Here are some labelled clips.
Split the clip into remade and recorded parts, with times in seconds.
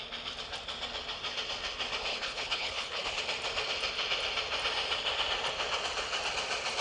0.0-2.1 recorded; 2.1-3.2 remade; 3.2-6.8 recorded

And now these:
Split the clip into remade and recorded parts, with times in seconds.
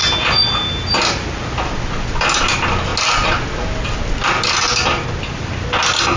0.0-6.2 recorded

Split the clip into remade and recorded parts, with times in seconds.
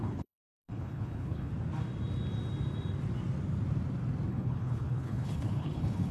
0.0-1.5 remade; 1.5-4.3 recorded; 4.3-6.1 remade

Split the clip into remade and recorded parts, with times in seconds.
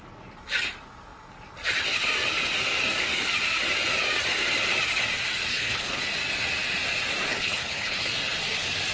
0.0-5.5 recorded; 5.5-6.0 remade; 6.0-7.3 recorded; 7.3-8.1 remade; 8.1-8.9 recorded